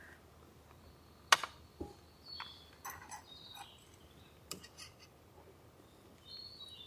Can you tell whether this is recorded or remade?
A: recorded